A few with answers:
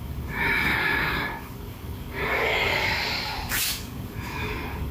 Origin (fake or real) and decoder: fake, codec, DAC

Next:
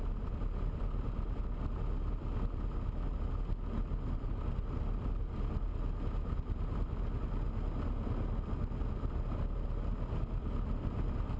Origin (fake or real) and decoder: real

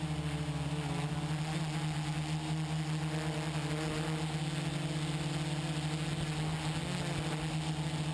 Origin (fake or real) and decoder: real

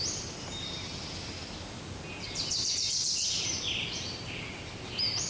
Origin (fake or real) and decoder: real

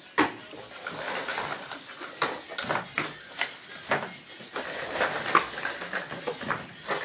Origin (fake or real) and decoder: real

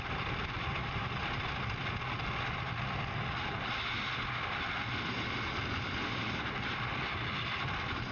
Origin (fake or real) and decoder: real